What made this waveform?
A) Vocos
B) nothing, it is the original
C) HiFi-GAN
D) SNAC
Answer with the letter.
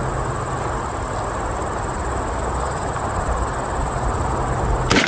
B